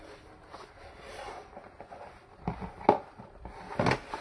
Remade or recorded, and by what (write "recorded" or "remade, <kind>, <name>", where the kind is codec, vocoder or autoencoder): recorded